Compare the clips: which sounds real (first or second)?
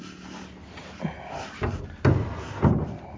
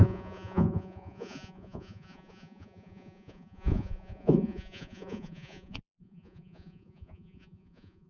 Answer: first